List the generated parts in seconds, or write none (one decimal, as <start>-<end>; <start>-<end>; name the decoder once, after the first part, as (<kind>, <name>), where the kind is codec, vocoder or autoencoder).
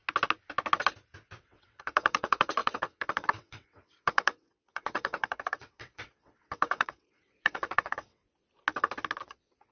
1.4-8.2 (vocoder, WaveNeXt); 9.2-9.7